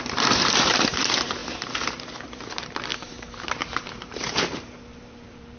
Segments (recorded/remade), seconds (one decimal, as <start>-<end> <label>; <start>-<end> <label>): 0.0-5.6 remade